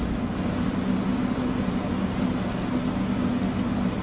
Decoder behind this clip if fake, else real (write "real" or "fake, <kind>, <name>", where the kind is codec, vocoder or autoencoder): real